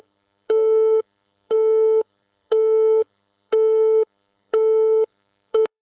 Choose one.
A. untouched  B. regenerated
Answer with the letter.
B